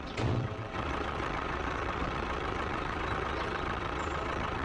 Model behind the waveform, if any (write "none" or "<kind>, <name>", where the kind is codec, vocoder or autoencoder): vocoder, WaveNeXt